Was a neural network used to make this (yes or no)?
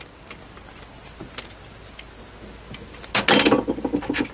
no